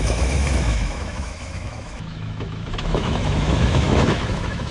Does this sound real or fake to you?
fake